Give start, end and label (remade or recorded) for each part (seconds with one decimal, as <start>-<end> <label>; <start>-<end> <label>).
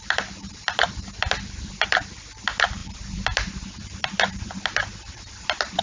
0.0-5.8 remade